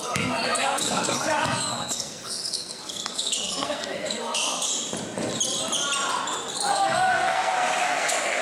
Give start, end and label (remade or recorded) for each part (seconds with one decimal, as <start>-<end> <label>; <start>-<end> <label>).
0.0-4.7 remade; 4.7-6.5 recorded; 6.5-8.4 remade